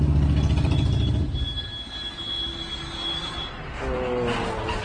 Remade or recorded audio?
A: recorded